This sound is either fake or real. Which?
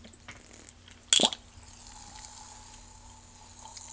real